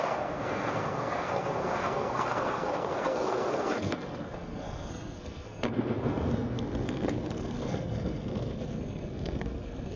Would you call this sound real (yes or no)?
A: no